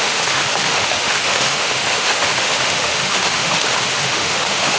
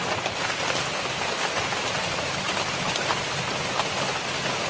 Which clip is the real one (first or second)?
second